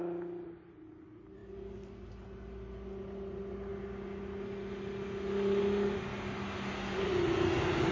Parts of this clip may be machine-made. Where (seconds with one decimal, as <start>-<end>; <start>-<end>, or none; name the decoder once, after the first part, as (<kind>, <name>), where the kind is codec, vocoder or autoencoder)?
none